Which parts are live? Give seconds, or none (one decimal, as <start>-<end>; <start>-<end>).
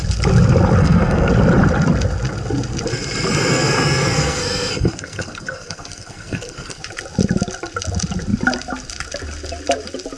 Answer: 0.0-0.8; 1.3-3.5; 6.8-10.2